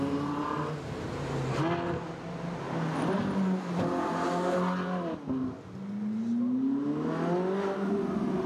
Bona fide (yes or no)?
yes